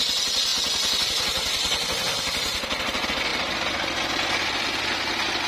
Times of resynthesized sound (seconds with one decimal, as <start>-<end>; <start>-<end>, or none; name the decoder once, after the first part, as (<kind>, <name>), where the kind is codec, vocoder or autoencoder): none